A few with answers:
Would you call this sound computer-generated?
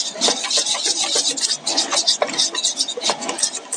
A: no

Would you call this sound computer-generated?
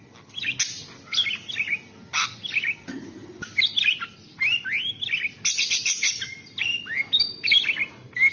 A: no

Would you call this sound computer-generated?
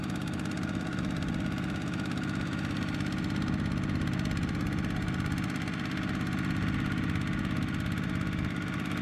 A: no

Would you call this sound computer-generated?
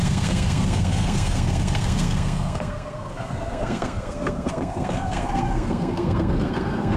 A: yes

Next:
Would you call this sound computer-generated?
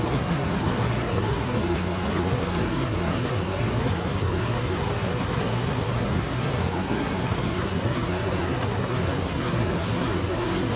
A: yes